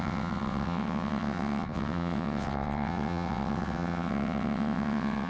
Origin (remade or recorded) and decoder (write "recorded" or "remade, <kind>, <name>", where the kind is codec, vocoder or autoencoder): remade, vocoder, WaveNeXt